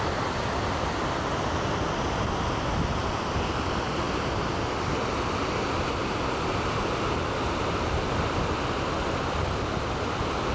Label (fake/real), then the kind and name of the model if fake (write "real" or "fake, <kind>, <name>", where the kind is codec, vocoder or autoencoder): real